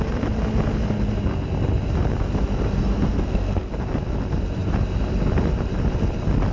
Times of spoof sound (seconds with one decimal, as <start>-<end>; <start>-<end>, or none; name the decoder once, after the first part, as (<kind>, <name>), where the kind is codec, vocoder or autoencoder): 2.8-3.7 (codec, SNAC)